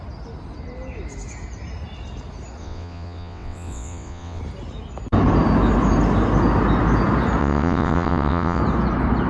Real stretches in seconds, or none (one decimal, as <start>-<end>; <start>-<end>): 0.0-2.6; 4.4-7.4; 8.6-9.3